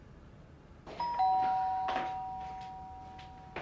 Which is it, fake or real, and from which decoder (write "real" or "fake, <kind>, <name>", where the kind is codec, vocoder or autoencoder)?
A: real